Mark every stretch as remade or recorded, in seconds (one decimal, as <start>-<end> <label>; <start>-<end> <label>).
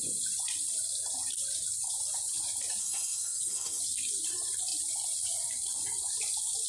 0.0-2.8 recorded; 2.8-3.8 remade; 3.8-6.7 recorded